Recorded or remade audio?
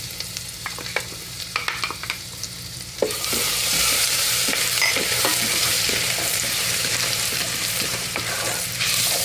remade